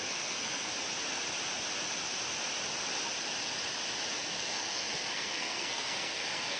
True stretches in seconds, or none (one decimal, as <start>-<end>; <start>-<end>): 0.7-4.3